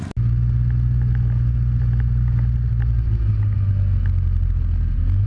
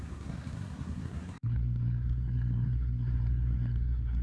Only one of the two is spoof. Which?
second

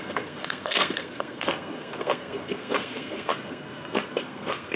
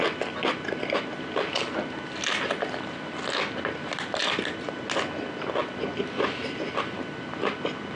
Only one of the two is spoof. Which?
first